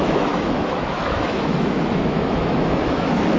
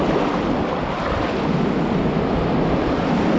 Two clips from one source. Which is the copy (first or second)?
first